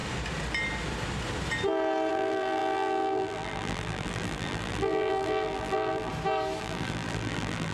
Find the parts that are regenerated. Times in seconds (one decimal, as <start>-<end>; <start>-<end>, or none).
2.1-6.1; 6.6-7.7